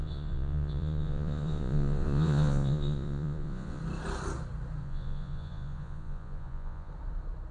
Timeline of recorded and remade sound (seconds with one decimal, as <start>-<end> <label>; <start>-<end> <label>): 0.0-3.8 remade; 3.8-4.8 recorded; 4.8-6.9 remade; 6.9-7.5 recorded